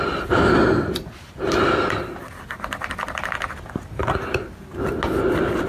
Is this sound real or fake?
real